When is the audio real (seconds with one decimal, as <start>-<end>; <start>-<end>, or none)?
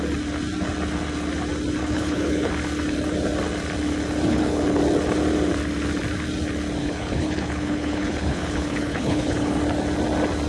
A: 0.0-1.8; 2.5-4.3; 4.8-6.8; 9.6-10.5